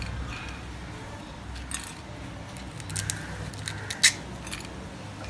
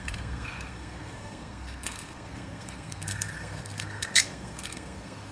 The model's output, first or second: second